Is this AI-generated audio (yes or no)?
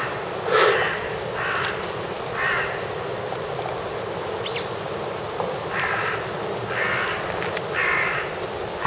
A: no